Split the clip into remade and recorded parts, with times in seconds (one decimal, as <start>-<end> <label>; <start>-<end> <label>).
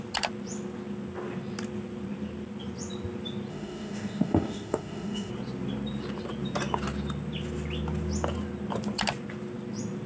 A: 0.0-3.5 recorded; 3.5-5.3 remade; 5.3-10.1 recorded